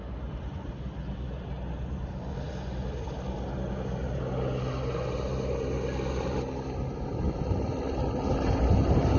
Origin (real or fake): real